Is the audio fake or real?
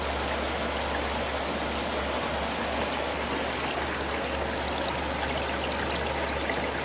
real